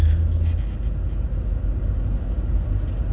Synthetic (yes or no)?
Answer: no